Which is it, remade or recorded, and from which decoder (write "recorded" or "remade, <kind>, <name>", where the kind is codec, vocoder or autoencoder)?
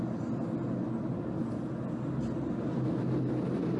recorded